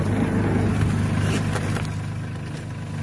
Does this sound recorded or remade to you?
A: recorded